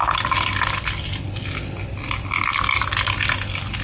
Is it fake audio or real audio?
real